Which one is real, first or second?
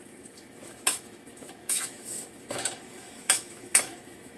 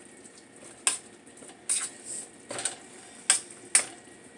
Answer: second